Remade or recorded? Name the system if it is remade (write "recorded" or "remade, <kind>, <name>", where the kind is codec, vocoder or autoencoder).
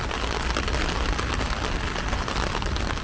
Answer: recorded